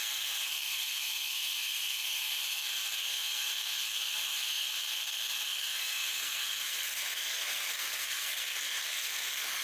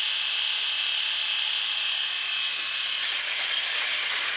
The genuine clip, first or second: second